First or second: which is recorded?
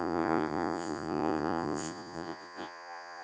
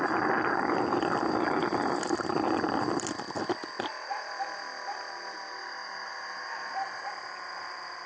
second